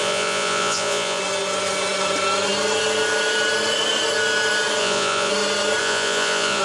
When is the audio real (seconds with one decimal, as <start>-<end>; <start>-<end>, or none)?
1.2-4.8; 5.3-5.8